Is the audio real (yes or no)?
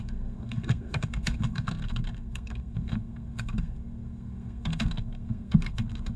no